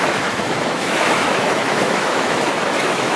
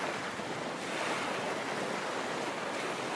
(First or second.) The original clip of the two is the second